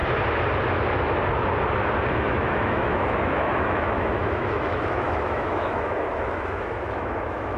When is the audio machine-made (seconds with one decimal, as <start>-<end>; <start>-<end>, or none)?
2.1-7.6